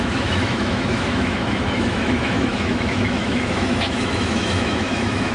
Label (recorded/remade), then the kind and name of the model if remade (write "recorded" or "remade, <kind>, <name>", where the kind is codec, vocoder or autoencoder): remade, autoencoder, DAC-VAE